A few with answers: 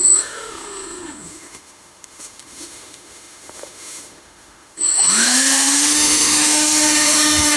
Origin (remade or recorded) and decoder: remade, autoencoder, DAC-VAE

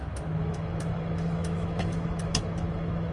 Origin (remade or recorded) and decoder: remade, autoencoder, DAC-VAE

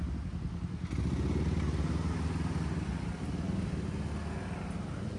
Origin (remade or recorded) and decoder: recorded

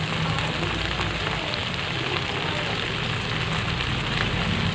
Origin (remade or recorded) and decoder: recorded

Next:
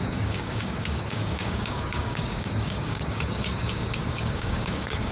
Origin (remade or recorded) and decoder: remade, codec, DAC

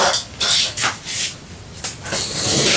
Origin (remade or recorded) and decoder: recorded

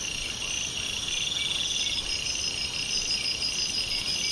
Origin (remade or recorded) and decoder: recorded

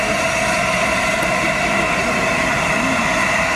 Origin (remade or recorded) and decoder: recorded